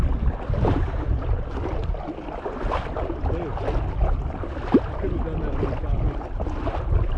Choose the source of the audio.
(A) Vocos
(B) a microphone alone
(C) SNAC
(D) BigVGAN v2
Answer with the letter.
B